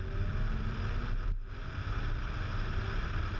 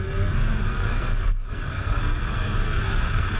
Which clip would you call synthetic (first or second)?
second